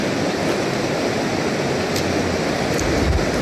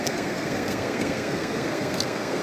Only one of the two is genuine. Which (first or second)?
first